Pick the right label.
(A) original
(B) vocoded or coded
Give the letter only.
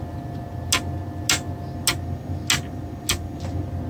A